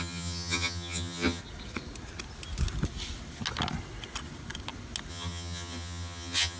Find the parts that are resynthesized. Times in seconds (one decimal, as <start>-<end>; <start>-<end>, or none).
0.0-1.4; 5.1-6.6